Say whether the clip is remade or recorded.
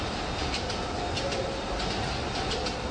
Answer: recorded